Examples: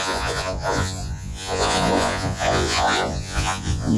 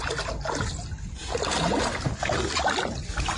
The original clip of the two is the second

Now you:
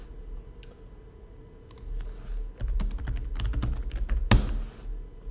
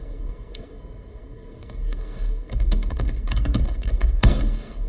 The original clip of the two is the first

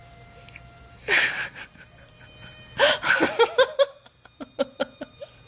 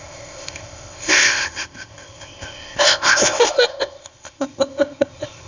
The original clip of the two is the first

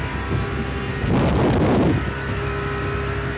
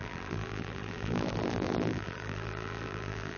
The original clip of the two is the first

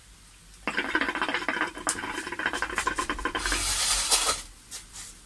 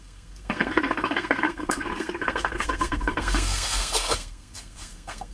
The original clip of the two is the first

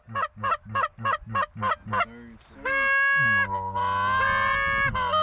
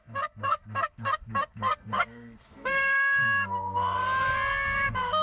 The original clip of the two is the first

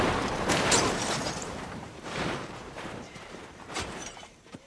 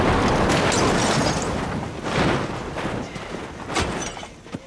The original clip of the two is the second